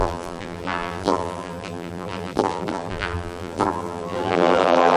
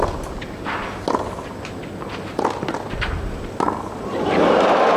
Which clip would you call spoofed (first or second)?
first